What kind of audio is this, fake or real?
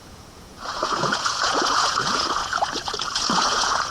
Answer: fake